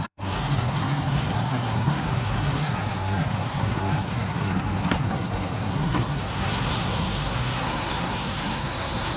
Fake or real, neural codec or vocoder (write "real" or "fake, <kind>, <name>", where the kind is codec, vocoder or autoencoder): fake, codec, SNAC